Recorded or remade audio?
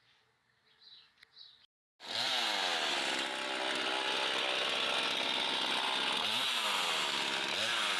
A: recorded